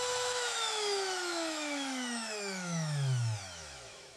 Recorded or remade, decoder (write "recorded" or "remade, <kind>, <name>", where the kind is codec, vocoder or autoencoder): remade, autoencoder, DAC-VAE